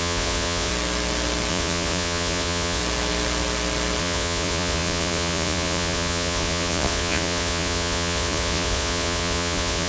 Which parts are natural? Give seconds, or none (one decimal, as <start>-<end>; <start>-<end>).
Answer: 0.7-1.5; 2.8-4.0